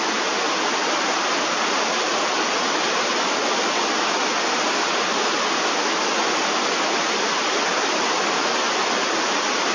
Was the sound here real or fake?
real